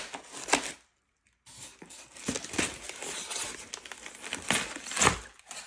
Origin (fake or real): real